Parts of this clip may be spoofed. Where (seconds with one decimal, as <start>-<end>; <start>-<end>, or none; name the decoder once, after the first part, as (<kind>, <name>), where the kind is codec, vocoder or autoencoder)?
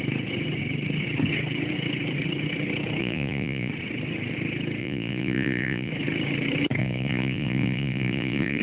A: 3.0-3.7 (vocoder, Vocos); 4.8-5.9; 6.8-8.6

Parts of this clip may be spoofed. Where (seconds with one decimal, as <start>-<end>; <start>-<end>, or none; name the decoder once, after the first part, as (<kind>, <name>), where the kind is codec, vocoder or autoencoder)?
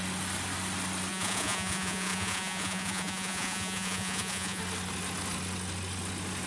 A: 1.1-4.6 (vocoder, Vocos)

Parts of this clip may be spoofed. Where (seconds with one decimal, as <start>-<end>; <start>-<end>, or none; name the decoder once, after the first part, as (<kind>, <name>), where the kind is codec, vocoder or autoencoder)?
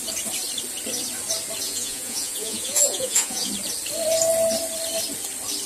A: 1.6-3.5 (vocoder, Vocos)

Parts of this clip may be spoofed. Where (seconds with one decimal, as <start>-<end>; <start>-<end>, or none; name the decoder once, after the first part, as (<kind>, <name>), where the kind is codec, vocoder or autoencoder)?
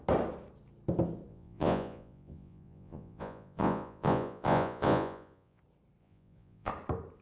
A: 1.3-5.6 (vocoder, Vocos); 6.0-6.7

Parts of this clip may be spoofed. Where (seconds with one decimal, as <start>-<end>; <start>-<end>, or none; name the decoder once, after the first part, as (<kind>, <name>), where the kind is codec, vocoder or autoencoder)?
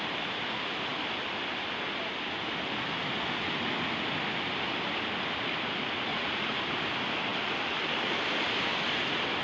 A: 6.1-6.7 (vocoder, Vocos)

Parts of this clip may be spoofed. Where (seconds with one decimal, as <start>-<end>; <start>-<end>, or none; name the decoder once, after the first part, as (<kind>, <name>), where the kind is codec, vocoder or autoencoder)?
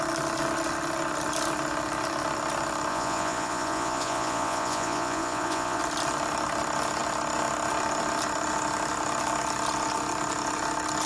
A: 2.9-5.8 (vocoder, Vocos)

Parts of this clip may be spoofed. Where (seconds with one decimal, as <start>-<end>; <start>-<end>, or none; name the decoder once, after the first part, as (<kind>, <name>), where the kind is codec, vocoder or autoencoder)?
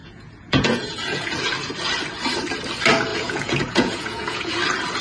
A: 0.0-1.4 (vocoder, Vocos); 3.1-4.5